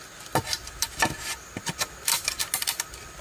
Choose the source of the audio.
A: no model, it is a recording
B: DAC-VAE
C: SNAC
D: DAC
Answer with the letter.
A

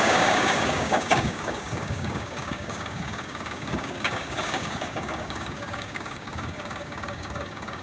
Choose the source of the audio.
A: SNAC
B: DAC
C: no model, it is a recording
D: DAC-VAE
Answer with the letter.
B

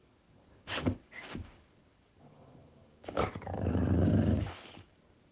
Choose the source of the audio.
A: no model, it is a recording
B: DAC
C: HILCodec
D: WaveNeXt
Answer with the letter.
B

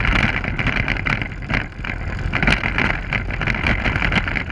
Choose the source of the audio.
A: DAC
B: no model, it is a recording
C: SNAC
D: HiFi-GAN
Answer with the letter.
B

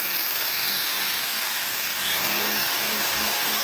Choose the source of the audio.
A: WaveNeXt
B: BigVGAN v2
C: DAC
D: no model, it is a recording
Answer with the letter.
C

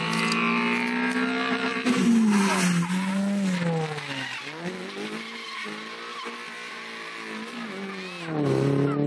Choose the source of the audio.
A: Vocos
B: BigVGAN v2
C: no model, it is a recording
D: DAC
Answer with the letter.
C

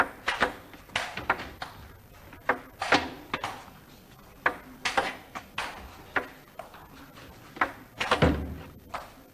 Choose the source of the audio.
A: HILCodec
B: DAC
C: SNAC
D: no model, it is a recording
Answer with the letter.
D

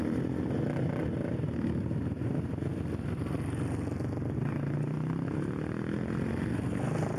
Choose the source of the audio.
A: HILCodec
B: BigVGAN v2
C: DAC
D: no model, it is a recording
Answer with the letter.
D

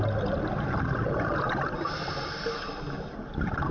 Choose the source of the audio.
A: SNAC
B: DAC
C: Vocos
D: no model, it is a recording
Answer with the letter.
D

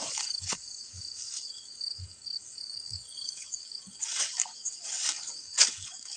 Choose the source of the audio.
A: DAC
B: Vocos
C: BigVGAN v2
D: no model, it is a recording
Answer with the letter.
A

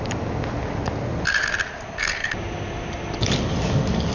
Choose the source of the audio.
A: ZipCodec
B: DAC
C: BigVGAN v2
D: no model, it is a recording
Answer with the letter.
D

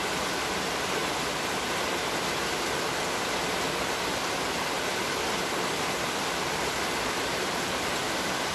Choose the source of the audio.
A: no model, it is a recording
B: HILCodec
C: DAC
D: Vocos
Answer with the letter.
A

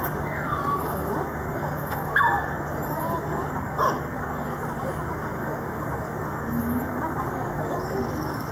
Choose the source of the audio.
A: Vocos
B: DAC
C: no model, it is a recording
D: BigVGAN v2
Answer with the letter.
B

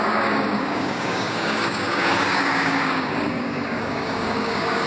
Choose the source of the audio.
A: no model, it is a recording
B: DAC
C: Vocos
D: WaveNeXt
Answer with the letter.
B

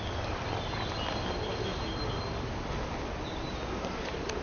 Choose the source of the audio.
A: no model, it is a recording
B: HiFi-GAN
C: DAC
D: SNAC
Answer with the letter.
A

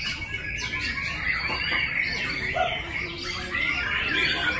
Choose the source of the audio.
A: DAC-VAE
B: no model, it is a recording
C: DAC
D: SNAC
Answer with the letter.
B